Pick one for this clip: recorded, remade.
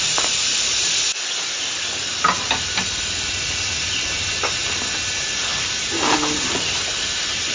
recorded